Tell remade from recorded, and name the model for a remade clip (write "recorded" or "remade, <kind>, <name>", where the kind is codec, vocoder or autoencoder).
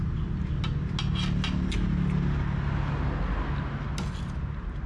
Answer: recorded